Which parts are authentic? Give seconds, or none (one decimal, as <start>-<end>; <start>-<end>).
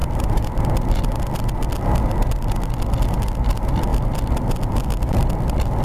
0.7-3.9; 4.6-5.8